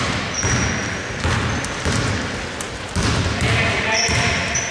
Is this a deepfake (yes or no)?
no